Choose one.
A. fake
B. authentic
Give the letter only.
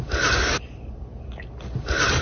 B